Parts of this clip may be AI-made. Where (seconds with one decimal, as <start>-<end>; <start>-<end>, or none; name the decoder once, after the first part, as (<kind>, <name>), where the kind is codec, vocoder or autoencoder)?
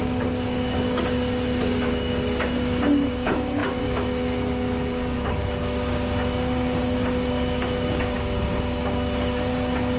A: 0.0-10.0 (codec, DAC)